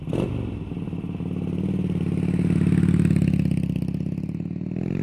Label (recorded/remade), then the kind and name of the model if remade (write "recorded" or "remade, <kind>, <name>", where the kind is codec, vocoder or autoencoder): recorded